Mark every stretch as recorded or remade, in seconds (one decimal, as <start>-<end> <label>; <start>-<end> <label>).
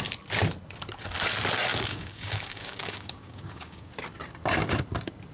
0.0-1.7 recorded; 1.7-3.9 remade; 3.9-5.3 recorded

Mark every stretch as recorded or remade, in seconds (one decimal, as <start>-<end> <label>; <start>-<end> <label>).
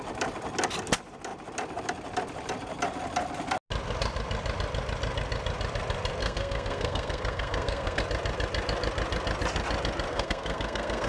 0.0-6.2 recorded; 6.2-8.0 remade; 8.0-10.1 recorded; 10.1-11.1 remade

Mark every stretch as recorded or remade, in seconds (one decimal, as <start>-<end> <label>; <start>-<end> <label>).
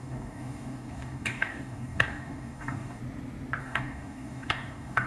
0.0-3.0 remade; 3.0-3.6 recorded; 3.6-5.1 remade